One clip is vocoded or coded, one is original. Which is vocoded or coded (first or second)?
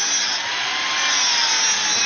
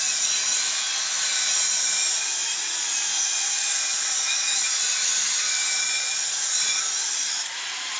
second